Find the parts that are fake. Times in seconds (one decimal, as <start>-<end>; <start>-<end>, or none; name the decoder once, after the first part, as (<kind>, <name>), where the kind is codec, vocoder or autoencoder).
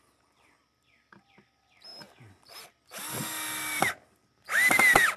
none